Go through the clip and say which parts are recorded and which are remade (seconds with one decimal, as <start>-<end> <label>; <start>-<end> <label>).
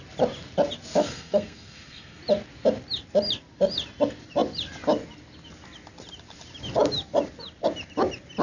0.0-1.0 recorded; 1.0-2.2 remade; 2.2-8.4 recorded